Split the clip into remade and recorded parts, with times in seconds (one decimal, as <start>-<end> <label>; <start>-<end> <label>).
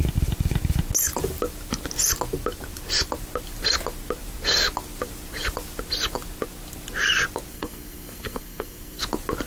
0.0-7.5 recorded; 7.5-9.0 remade; 9.0-9.5 recorded